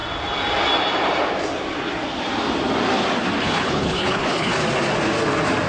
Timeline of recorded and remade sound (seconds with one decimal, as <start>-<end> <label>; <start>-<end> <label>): 0.0-3.4 recorded; 3.4-4.6 remade; 4.6-5.7 recorded